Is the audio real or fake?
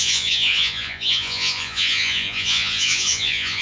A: fake